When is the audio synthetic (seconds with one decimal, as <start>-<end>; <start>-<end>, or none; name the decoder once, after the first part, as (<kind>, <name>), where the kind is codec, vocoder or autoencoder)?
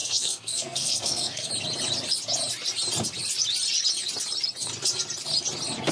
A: 0.0-1.5 (codec, SNAC)